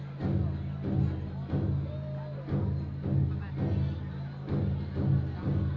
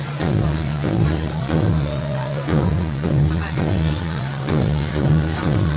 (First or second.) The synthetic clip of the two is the second